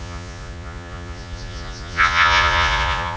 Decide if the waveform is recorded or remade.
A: remade